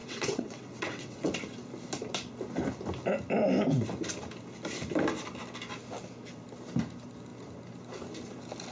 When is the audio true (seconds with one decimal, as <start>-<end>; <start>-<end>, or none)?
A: 1.3-8.7